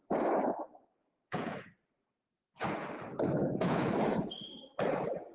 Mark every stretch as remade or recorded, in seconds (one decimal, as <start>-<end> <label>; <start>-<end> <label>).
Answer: 0.0-1.0 recorded; 1.0-1.7 remade; 1.7-3.4 recorded; 3.4-3.9 remade; 3.9-5.3 recorded